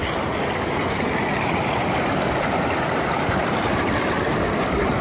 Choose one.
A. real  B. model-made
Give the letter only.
A